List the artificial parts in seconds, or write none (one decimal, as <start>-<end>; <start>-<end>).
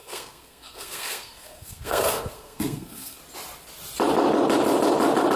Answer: 0.0-3.2